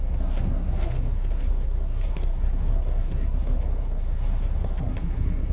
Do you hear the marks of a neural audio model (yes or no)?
yes